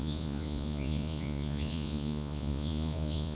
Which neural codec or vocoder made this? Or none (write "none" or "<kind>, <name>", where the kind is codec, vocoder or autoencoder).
vocoder, Vocos